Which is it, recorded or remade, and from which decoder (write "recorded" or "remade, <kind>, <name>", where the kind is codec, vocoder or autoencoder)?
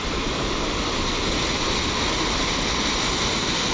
recorded